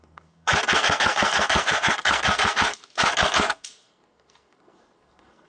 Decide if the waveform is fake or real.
fake